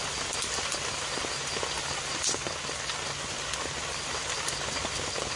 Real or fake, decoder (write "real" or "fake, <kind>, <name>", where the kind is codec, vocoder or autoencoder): real